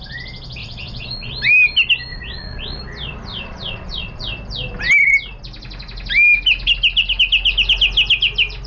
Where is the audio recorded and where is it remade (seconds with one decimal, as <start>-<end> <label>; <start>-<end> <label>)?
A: 0.0-0.6 recorded; 0.6-1.3 remade; 1.3-2.1 recorded; 2.1-2.8 remade; 2.8-3.3 recorded; 3.3-4.2 remade; 4.2-8.7 recorded